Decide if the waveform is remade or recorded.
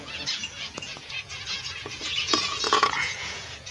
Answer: remade